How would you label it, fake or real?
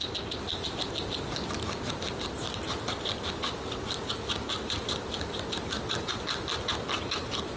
real